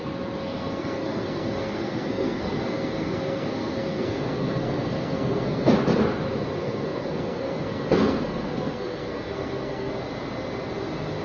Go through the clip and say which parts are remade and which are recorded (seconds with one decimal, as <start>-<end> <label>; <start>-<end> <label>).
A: 0.0-0.4 recorded; 0.4-5.7 remade; 5.7-6.6 recorded; 6.6-9.9 remade; 9.9-11.2 recorded